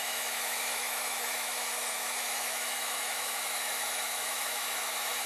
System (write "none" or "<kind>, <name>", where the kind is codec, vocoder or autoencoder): autoencoder, DAC-VAE